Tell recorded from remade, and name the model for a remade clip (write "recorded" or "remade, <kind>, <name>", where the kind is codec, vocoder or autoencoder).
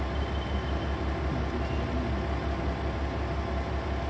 recorded